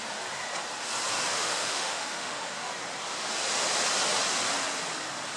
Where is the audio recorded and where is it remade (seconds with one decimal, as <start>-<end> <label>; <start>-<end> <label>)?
0.0-1.3 recorded; 1.3-2.7 remade; 2.7-5.4 recorded